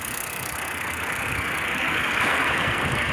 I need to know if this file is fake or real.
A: fake